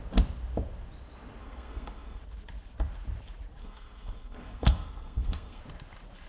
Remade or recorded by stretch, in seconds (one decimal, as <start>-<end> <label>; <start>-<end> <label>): 0.0-1.4 recorded; 1.4-2.2 remade; 2.2-3.6 recorded; 3.6-5.6 remade; 5.6-6.3 recorded